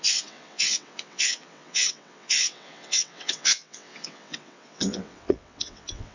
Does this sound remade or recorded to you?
remade